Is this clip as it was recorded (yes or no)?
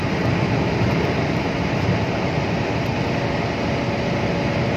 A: yes